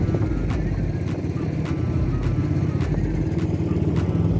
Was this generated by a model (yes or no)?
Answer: no